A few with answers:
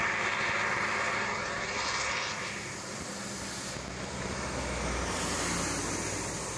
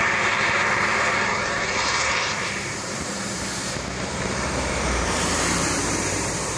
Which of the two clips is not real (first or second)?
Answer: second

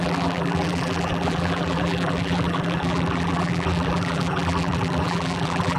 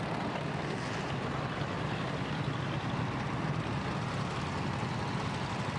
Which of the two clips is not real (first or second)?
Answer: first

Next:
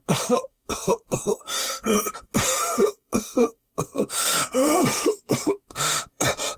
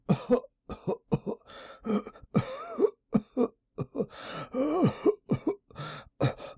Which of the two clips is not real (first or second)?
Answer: first